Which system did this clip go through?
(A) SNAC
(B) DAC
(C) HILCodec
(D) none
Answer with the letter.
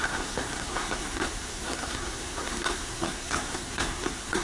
A